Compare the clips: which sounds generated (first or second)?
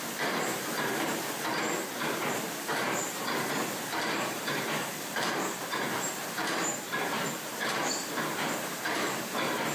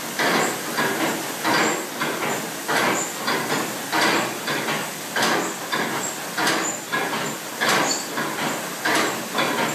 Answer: first